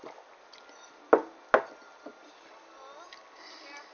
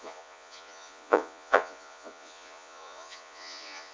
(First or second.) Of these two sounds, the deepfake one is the second